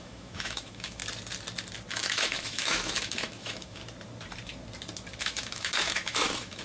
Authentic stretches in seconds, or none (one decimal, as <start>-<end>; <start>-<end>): 1.0-1.9; 3.8-5.2

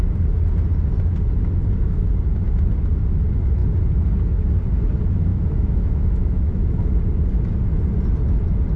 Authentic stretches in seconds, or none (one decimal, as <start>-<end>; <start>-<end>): 0.0-5.3; 7.0-8.8